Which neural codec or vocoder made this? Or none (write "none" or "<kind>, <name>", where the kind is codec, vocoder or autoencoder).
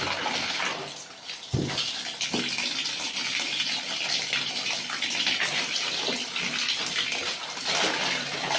none